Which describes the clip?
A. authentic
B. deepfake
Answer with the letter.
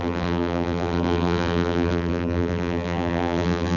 B